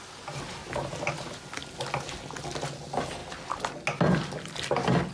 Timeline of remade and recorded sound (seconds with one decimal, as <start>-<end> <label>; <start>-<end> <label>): 0.0-0.6 recorded; 0.6-1.1 remade; 1.1-5.1 recorded